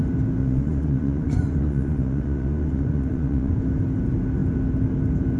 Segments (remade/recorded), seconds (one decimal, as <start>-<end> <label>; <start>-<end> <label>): 0.0-0.4 recorded; 0.4-3.6 remade; 3.6-5.4 recorded